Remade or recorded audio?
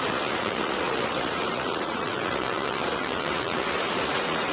remade